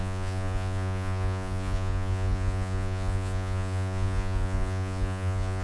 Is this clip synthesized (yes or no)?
yes